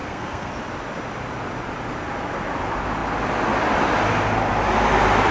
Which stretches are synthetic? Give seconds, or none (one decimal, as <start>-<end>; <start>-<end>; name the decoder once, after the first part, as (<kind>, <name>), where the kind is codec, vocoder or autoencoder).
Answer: 0.0-0.5 (codec, SNAC)